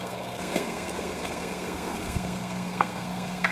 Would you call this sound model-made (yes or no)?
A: yes